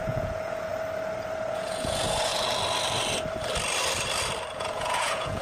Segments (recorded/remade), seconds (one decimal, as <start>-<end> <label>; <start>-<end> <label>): 0.0-0.7 remade; 0.7-1.5 recorded; 1.5-2.3 remade; 2.3-4.5 recorded; 4.5-5.4 remade